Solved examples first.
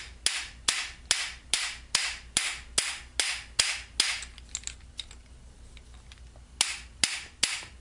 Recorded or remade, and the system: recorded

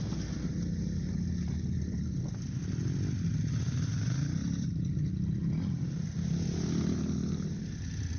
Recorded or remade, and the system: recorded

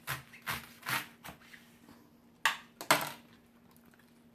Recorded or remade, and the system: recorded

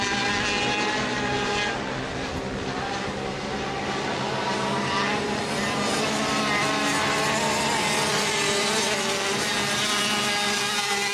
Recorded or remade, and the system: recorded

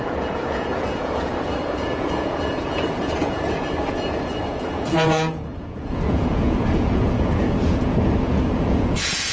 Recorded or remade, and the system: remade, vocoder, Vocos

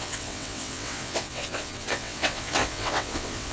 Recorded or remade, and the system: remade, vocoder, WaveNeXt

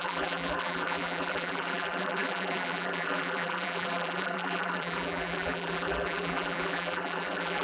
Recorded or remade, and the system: remade, vocoder, BigVGAN v2